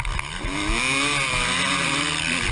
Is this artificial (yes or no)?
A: no